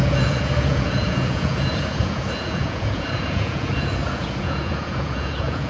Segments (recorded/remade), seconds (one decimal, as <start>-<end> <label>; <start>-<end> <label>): 0.0-5.7 remade